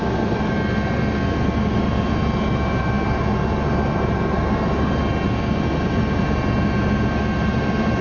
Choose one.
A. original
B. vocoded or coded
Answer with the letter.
A